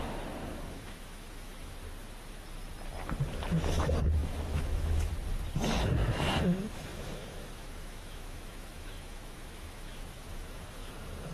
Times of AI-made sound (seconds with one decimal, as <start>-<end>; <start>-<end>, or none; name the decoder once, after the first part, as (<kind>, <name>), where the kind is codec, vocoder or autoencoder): 0.5-1.7 (autoencoder, DAC-VAE); 4.2-5.1; 6.9-10.9